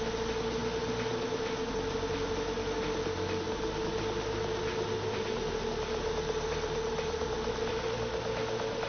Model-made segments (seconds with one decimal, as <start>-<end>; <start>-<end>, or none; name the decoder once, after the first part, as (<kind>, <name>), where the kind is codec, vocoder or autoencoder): none